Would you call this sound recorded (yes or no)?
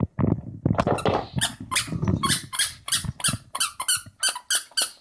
yes